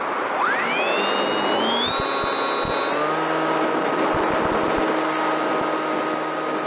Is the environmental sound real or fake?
real